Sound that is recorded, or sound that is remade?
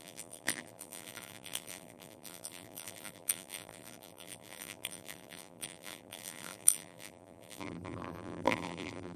remade